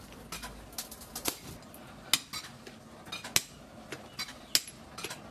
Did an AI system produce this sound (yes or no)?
no